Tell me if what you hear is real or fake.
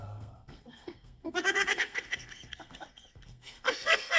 fake